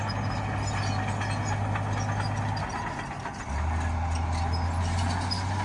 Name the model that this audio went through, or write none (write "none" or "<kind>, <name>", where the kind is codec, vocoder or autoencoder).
none